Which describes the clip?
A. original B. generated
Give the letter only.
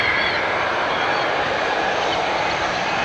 B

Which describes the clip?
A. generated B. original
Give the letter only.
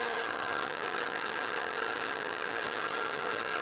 A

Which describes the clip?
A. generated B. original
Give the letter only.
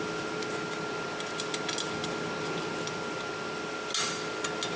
B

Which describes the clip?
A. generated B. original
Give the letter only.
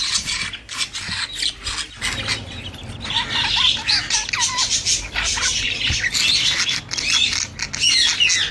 B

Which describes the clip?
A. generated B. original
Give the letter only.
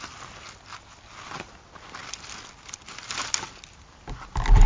B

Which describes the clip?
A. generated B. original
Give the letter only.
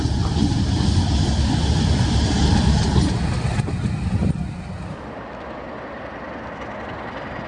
B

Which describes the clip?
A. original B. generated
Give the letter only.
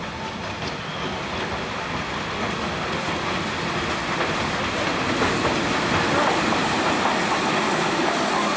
A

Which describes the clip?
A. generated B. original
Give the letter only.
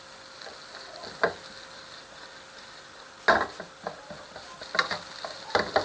B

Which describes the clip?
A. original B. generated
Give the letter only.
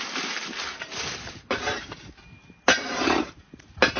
B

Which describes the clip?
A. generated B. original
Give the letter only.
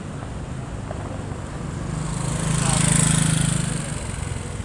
B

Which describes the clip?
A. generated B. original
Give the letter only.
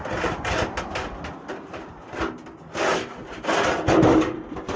B